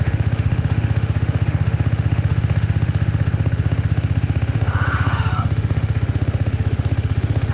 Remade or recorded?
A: remade